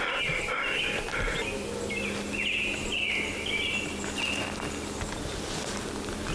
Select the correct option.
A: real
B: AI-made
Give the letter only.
A